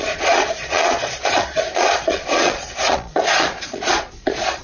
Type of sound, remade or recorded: remade